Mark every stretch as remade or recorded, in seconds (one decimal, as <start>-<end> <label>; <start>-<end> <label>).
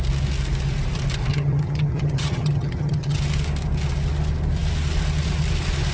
0.0-1.3 recorded; 1.3-3.2 remade; 3.2-5.9 recorded